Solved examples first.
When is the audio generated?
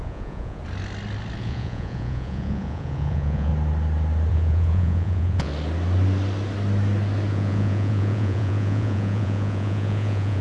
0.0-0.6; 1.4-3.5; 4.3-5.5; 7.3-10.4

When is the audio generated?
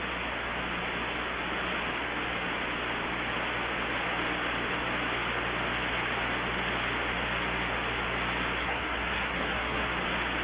8.6-9.9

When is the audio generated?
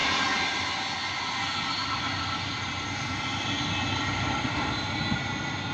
none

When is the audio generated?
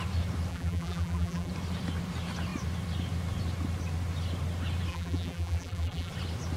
0.5-1.5; 4.9-6.1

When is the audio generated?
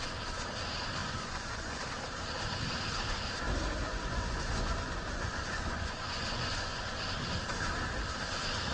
1.0-1.8; 3.9-6.8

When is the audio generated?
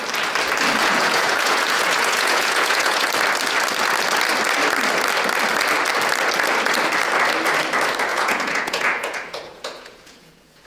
0.8-3.1; 8.1-10.7